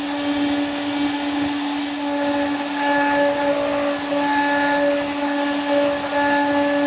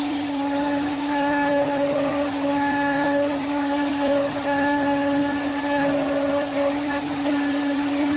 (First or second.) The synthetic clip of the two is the second